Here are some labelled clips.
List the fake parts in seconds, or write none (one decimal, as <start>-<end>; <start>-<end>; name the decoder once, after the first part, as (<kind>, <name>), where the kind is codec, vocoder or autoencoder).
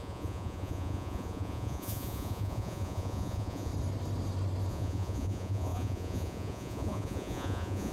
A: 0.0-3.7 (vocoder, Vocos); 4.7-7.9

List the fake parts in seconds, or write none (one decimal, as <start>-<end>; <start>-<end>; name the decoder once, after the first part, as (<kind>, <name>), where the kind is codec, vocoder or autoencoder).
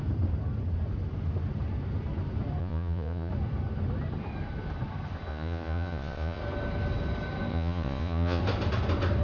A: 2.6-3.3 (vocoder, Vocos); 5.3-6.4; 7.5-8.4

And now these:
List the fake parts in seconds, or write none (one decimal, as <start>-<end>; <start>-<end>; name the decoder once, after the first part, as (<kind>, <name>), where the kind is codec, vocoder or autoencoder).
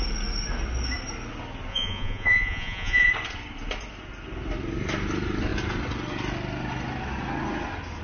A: 1.7-3.1 (vocoder, Vocos)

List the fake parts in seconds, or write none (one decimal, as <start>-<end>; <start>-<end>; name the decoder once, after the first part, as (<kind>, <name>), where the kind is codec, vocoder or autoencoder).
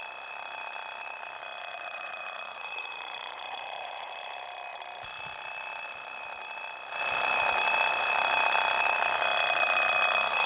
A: 1.6-4.2 (vocoder, Vocos)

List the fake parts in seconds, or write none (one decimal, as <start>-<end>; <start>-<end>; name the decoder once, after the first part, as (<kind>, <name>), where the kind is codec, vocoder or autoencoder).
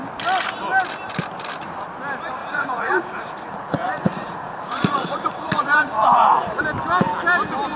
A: 2.4-6.6 (vocoder, Vocos)